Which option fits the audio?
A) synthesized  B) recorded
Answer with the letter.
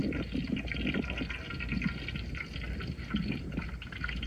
B